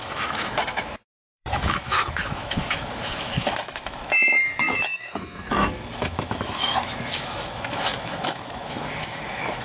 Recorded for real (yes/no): no